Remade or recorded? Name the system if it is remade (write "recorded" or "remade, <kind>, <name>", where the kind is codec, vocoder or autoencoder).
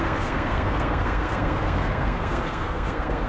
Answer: remade, codec, SNAC